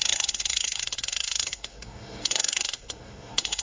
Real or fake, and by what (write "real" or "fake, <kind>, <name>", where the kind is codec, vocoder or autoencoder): fake, codec, SNAC